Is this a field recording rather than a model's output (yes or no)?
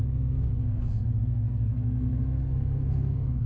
no